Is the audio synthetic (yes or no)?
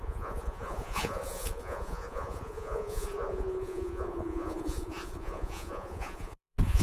yes